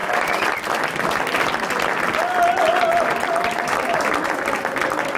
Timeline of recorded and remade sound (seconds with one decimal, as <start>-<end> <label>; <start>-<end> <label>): 0.0-5.2 recorded